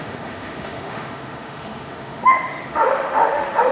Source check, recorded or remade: remade